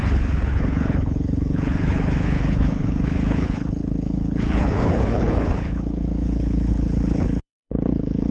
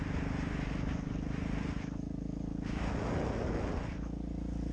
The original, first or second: second